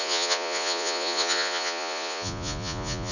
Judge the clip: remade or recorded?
remade